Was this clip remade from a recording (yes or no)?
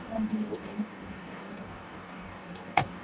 yes